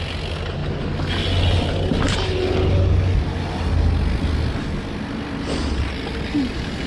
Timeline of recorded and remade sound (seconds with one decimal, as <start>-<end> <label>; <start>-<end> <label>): 0.0-6.9 recorded